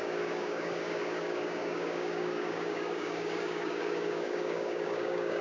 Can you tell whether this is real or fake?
fake